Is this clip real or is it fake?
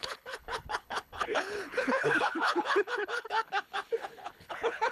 fake